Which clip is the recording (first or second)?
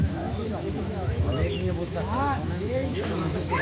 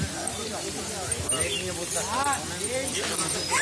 second